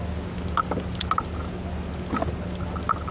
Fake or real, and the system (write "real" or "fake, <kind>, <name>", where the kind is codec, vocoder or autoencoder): real